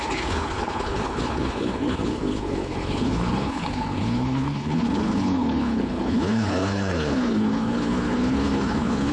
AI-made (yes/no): yes